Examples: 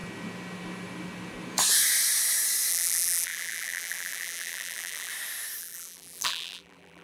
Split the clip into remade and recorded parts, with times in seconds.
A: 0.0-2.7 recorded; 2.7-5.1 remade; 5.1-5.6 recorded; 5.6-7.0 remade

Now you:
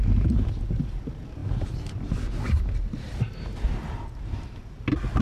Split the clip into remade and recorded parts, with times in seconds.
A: 0.0-1.4 recorded; 1.4-4.5 remade; 4.5-5.2 recorded